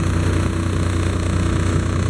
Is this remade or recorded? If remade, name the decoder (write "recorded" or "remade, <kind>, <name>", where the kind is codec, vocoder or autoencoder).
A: remade, autoencoder, DAC-VAE